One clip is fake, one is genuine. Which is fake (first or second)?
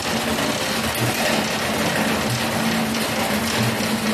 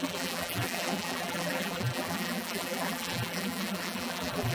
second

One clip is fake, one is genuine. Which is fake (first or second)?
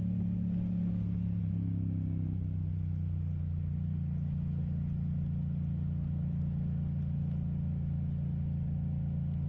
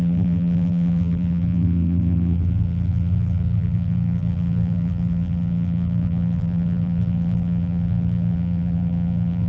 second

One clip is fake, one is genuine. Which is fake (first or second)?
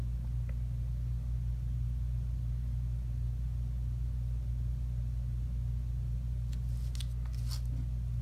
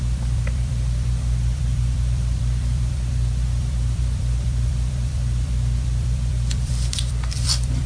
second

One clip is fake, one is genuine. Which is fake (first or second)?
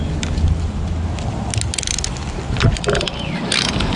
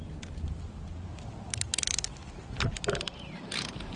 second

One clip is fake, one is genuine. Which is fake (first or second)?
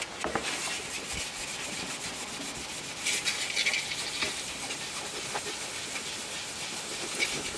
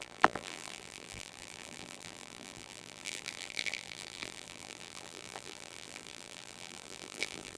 second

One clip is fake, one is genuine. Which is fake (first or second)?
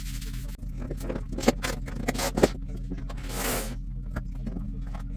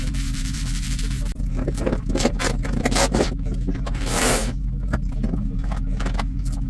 second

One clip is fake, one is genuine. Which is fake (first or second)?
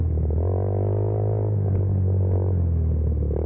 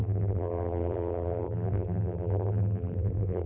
second